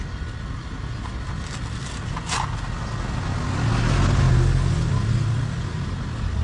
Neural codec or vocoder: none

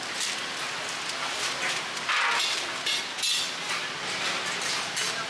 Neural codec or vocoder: none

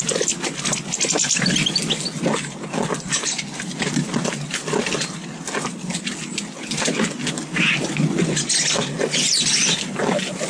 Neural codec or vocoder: none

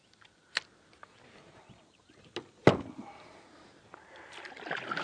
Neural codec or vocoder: none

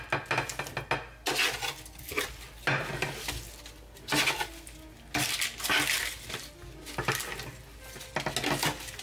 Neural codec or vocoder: none